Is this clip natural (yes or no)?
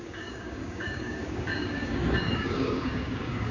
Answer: no